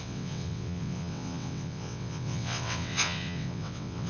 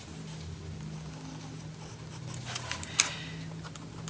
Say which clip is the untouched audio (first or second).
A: second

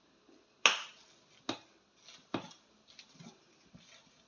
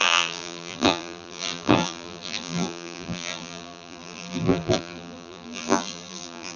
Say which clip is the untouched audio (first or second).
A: first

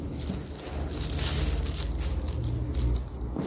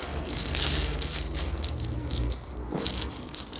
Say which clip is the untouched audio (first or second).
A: first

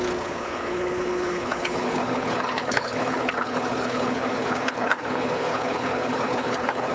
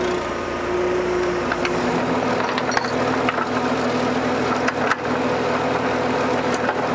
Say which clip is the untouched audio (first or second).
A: second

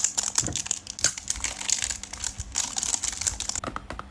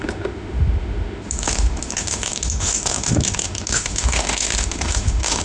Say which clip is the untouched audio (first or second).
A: first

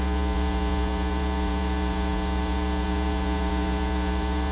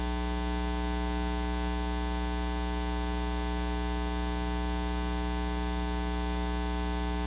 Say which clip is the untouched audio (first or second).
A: second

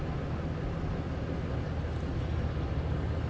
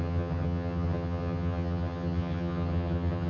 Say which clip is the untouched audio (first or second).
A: first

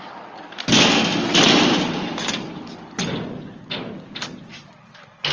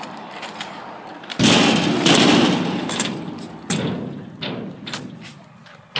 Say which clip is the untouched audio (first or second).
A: first